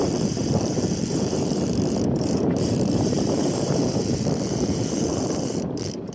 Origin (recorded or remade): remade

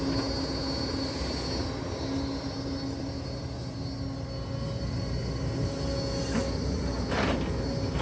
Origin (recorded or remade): recorded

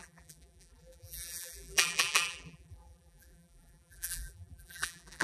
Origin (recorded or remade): remade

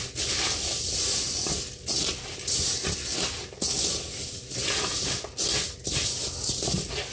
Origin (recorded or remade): recorded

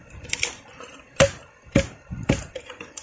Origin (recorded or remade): remade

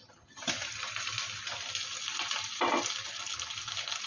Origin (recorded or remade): recorded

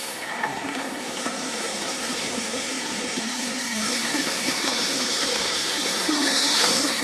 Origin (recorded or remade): remade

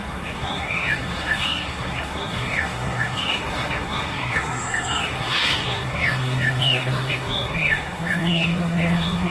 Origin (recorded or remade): remade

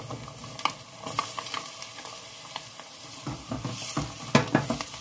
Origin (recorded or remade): recorded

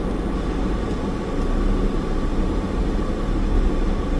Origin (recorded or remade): recorded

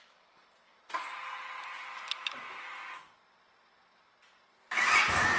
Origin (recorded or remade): recorded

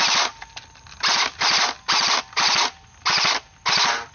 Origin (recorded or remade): recorded